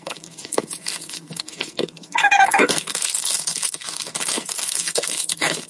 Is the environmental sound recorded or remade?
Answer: remade